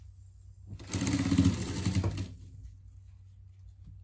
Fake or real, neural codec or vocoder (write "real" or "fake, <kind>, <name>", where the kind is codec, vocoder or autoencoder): real